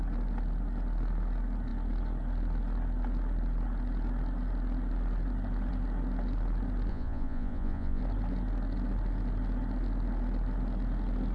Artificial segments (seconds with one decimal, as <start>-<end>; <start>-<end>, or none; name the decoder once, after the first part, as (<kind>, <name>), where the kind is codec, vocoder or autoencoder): 6.9-8.0 (vocoder, Vocos)